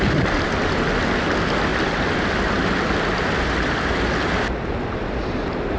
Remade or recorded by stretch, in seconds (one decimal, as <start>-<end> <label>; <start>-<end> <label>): 0.0-5.8 recorded